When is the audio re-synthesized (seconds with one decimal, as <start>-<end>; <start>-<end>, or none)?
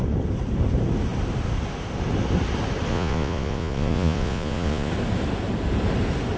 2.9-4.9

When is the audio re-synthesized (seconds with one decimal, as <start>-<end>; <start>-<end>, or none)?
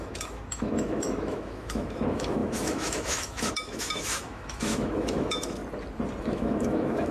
0.0-5.6; 6.2-7.1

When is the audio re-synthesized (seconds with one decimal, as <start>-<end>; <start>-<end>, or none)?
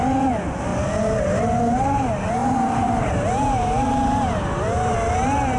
2.4-4.9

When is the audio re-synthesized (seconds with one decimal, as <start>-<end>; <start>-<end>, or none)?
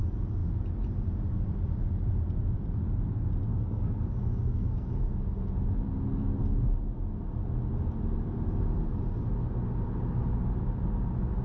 3.5-5.0